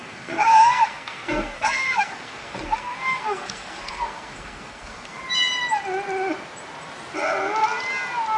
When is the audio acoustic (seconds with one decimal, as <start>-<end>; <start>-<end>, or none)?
5.2-8.4